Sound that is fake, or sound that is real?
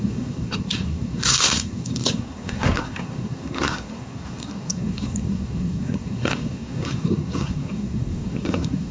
fake